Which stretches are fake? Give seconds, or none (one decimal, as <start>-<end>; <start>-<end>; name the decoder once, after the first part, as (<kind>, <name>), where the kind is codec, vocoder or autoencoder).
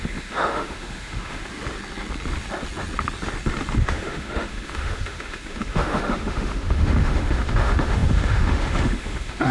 0.0-1.4 (autoencoder, DAC-VAE); 3.8-9.5